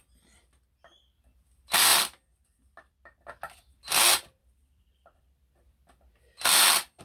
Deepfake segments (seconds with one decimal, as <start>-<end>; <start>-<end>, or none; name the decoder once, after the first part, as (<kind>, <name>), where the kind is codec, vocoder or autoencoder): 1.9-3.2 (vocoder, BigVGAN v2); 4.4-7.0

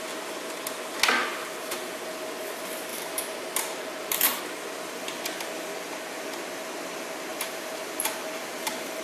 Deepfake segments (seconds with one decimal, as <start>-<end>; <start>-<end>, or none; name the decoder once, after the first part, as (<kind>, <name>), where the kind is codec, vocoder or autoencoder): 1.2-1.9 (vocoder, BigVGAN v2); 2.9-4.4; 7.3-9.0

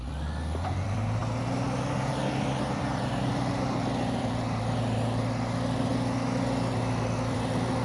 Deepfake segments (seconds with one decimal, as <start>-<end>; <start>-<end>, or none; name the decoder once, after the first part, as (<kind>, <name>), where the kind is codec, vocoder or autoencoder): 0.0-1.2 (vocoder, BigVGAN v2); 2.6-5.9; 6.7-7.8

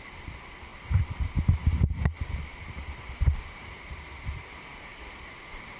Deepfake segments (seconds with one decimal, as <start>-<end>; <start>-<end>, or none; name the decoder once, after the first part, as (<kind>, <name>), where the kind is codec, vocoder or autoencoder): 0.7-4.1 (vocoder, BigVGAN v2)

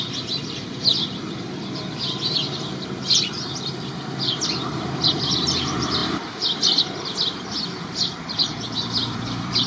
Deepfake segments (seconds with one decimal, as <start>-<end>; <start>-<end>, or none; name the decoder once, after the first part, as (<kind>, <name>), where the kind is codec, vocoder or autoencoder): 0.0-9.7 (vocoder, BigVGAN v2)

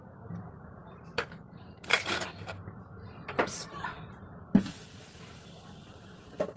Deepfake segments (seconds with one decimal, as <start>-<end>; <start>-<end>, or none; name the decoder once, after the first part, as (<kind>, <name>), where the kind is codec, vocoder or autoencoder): 0.0-6.6 (vocoder, BigVGAN v2)

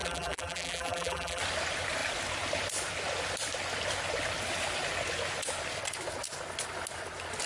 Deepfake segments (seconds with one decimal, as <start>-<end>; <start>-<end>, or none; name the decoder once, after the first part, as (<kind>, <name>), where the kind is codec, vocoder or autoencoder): 0.0-1.4 (vocoder, BigVGAN v2)

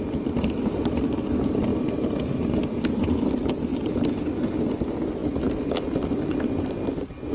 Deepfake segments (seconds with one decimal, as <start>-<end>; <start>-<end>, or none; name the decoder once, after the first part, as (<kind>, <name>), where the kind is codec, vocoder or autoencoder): none